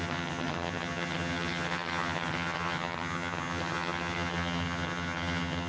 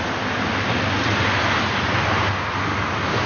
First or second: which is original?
second